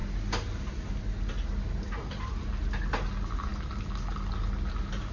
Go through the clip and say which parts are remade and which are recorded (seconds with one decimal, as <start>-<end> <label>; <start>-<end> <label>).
0.0-5.1 recorded